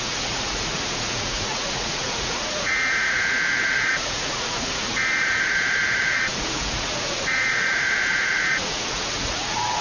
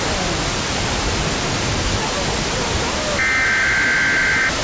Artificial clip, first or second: first